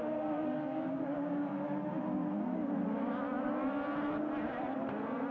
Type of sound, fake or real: real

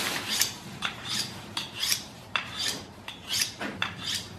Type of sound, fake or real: fake